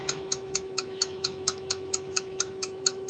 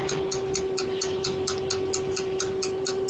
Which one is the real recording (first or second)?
second